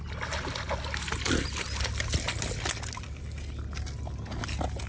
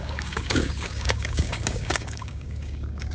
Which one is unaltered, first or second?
first